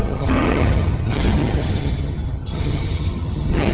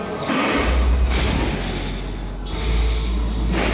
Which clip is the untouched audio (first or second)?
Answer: second